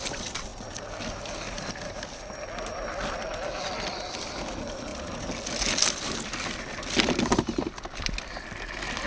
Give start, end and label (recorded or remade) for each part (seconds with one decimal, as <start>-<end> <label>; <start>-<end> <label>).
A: 0.0-0.5 remade; 0.5-3.8 recorded; 3.8-4.9 remade; 4.9-9.1 recorded